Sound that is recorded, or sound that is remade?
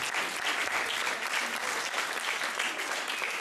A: recorded